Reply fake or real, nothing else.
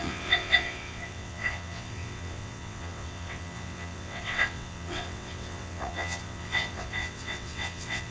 fake